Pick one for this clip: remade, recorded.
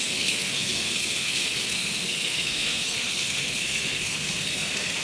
remade